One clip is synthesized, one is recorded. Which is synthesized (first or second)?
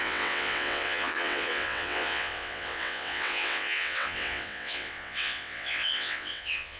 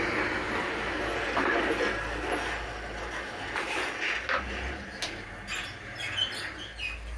first